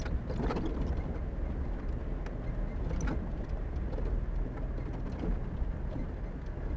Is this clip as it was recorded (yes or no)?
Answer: yes